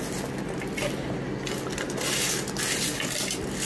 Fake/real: real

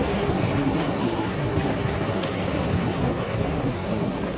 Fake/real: fake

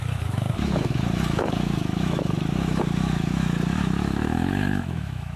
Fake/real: fake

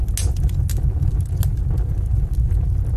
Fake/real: real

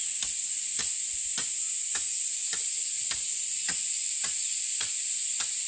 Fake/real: real